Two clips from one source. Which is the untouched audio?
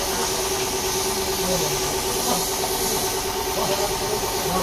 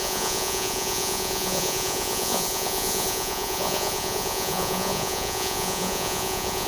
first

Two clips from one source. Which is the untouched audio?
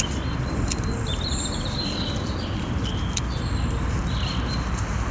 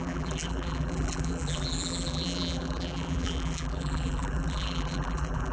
first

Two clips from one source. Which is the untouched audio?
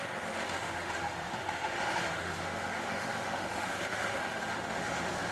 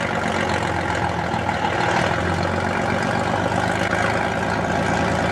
second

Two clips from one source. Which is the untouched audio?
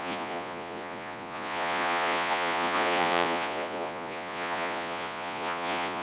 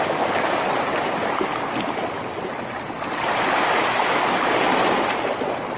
second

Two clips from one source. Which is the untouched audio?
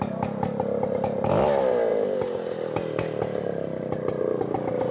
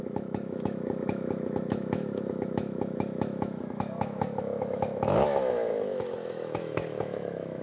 first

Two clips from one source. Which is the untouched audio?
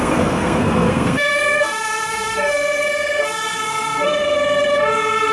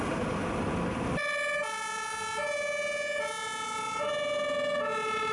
second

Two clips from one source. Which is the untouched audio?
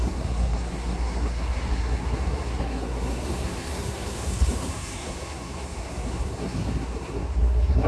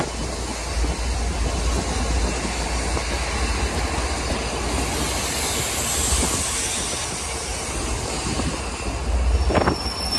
second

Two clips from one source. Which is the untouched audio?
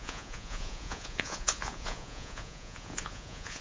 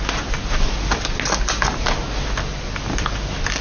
second